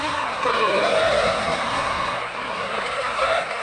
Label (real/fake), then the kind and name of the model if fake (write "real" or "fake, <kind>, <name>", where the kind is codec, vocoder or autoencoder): fake, codec, SNAC